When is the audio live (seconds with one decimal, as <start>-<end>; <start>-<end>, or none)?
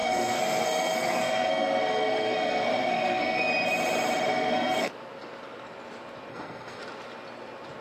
3.5-4.3; 4.9-6.3; 6.8-7.8